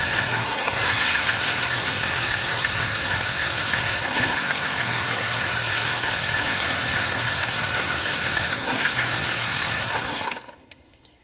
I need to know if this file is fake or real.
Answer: fake